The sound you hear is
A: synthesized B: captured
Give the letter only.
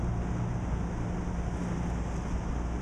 B